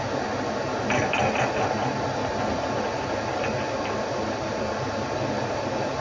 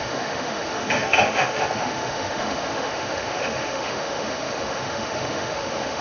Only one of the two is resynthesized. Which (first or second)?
second